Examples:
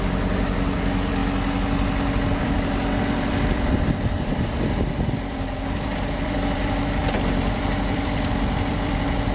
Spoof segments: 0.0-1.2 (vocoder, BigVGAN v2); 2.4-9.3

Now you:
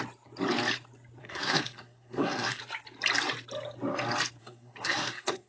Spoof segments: 1.2-2.6 (codec, SNAC); 4.4-5.5

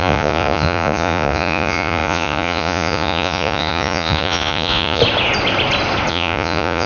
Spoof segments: 0.0-5.0 (vocoder, Vocos); 6.1-6.9

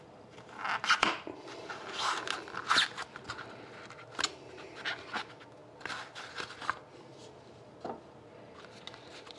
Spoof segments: none